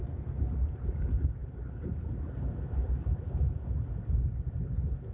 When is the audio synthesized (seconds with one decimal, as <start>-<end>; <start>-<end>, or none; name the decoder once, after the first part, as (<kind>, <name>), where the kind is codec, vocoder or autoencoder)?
none